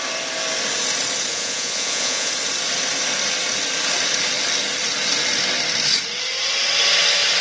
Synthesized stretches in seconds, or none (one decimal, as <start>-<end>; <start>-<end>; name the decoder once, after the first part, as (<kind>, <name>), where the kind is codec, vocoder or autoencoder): 1.3-2.3 (vocoder, Vocos)